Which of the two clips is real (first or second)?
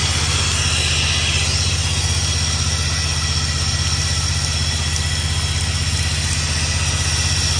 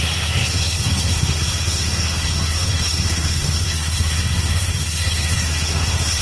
first